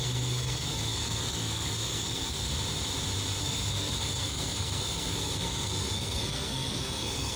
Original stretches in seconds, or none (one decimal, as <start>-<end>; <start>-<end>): 2.5-3.4